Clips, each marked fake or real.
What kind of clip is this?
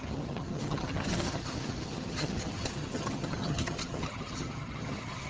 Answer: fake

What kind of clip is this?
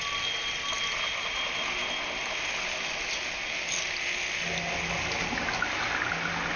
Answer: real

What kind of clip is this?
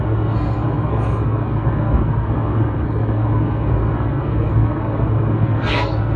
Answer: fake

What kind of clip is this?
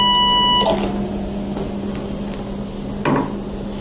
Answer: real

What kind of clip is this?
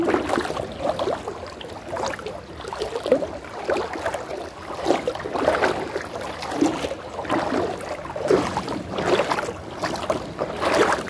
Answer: real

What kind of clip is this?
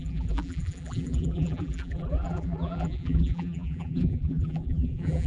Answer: fake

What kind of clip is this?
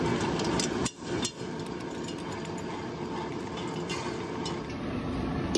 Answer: real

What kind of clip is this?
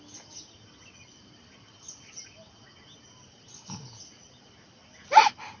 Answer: real